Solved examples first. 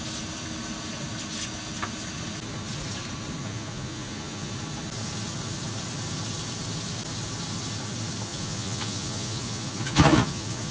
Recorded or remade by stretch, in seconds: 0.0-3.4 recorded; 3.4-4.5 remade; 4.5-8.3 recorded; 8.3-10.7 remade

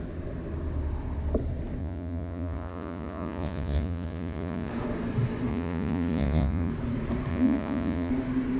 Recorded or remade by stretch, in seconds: 0.0-1.8 recorded; 1.8-4.7 remade; 4.7-5.5 recorded; 5.5-6.7 remade; 6.7-7.3 recorded; 7.3-8.1 remade; 8.1-8.6 recorded